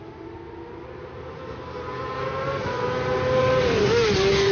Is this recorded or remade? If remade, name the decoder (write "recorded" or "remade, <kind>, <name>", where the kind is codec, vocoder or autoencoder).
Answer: recorded